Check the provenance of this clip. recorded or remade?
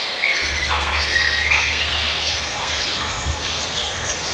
remade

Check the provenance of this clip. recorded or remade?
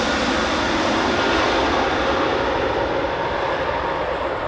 recorded